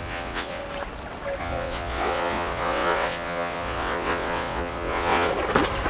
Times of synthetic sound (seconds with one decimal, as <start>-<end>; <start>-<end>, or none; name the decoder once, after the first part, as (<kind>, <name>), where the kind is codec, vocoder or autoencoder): 0.0-0.6 (vocoder, WaveNeXt); 1.4-5.3